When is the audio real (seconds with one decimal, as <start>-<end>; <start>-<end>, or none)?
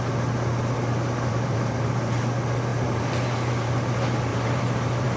0.0-1.3; 2.3-2.7; 3.7-4.3